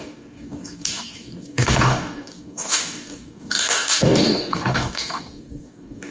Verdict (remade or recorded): remade